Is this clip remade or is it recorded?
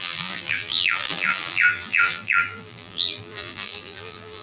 remade